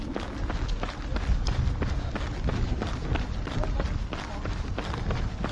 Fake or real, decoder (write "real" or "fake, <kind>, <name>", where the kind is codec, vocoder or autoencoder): real